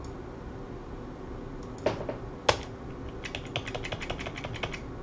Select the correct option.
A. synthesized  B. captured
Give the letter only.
B